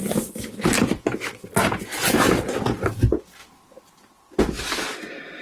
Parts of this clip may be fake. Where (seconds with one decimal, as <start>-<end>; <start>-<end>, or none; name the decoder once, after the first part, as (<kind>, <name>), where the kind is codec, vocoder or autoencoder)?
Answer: none

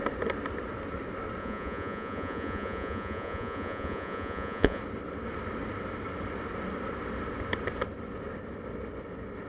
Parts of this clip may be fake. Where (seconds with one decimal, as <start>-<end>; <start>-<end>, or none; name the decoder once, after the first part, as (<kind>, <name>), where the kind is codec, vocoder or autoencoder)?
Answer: 1.4-4.8 (vocoder, Vocos)